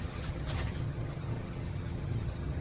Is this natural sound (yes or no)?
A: no